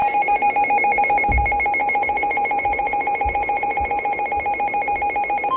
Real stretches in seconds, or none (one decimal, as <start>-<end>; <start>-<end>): 0.0-1.8; 4.2-5.6

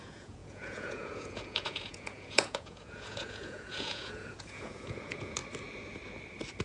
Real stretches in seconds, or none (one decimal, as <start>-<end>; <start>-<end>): 5.4-6.6

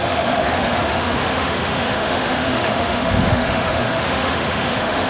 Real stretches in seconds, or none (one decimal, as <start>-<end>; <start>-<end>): none

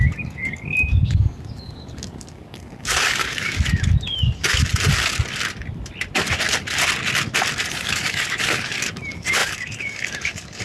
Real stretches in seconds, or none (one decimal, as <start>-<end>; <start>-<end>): 4.6-7.7

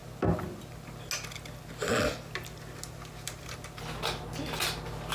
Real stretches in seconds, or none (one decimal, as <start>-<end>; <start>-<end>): 0.0-5.1